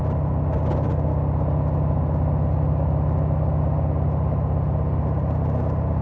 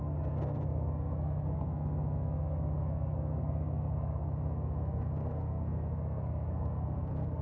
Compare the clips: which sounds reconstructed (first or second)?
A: second